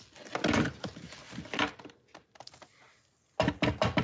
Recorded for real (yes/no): yes